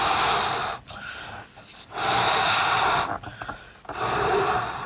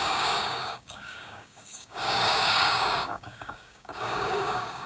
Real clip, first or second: first